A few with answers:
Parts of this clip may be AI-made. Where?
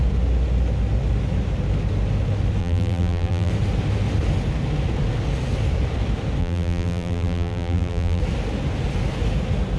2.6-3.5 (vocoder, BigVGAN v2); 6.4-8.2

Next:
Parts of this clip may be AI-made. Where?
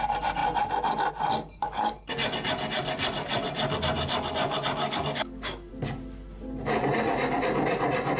1.6-2.1 (codec, DAC); 4.8-5.7